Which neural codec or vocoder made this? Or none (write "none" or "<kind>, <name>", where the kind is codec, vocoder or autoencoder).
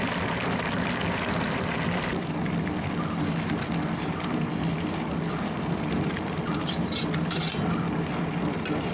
none